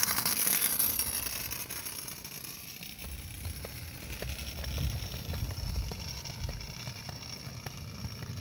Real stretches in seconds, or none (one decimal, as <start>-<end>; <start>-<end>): 0.7-8.4